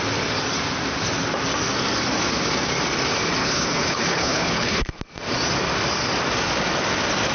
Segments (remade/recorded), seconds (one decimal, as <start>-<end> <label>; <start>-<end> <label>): 0.0-3.4 recorded; 3.4-5.0 remade; 5.0-7.3 recorded